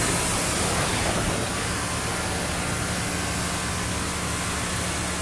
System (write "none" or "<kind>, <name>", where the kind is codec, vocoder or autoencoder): none